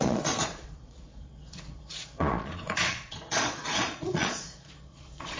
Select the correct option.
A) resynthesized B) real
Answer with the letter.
A